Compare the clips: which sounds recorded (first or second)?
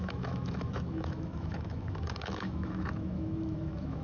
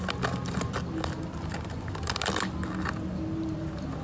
second